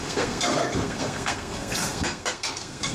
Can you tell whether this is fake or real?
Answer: fake